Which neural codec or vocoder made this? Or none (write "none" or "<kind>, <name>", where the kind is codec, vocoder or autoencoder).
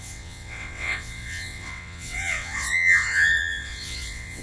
vocoder, WaveNeXt